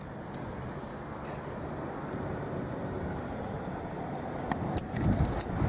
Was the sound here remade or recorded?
recorded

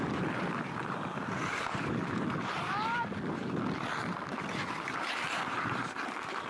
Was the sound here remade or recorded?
recorded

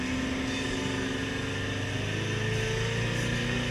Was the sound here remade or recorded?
recorded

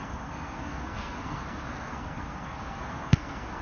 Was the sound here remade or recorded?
remade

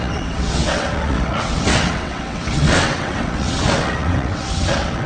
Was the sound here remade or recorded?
remade